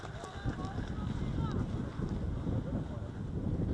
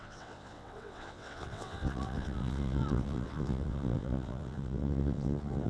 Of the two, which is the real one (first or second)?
first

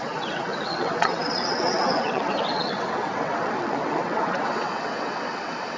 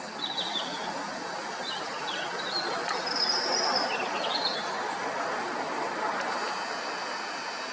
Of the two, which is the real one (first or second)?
second